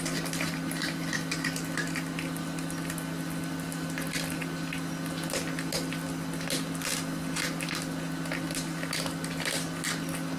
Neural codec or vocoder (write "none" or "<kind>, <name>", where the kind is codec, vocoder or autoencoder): none